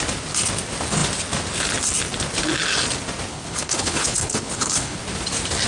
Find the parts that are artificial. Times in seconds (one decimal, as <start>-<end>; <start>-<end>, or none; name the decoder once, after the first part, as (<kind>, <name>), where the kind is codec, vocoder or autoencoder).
3.3-5.0 (codec, HILCodec)